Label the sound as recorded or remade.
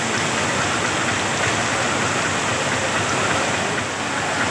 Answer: recorded